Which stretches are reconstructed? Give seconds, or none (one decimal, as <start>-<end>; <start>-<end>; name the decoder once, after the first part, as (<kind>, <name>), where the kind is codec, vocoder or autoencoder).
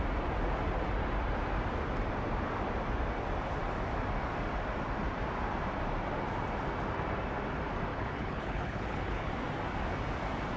7.9-9.3 (codec, HILCodec)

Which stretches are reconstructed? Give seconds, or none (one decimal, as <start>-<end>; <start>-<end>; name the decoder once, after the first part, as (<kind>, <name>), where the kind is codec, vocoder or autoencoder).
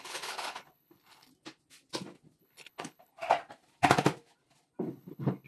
0.0-1.3 (codec, HILCodec); 2.4-3.1; 4.8-5.5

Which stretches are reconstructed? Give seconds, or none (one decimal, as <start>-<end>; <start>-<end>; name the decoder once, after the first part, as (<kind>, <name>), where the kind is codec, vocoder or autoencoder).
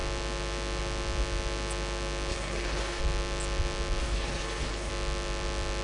2.3-3.0 (codec, HILCodec); 4.0-4.9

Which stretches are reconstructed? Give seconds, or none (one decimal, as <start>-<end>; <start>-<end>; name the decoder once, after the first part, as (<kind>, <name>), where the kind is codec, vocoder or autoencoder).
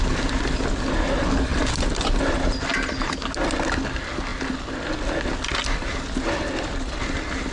none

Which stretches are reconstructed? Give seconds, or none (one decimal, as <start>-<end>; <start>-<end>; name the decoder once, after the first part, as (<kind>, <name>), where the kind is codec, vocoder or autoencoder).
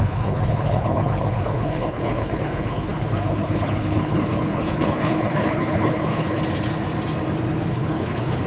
0.0-6.4 (codec, HILCodec); 7.6-8.5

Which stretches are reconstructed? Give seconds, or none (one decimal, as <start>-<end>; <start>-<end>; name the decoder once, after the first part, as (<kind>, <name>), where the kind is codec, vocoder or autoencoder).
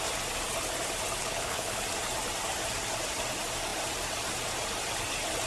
1.2-1.8 (codec, HILCodec)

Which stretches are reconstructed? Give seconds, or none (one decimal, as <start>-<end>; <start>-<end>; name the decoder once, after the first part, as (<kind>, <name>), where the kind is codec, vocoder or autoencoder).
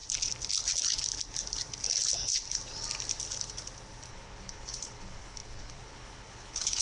4.1-6.8 (codec, HILCodec)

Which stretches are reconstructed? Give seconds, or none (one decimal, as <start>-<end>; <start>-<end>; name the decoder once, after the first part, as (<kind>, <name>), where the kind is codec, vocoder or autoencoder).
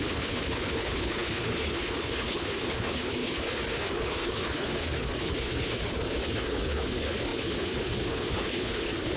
0.0-9.2 (codec, HILCodec)